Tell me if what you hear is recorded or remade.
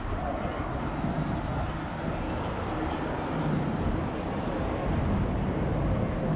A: recorded